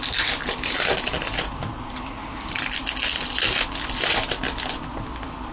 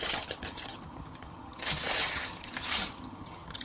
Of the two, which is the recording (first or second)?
first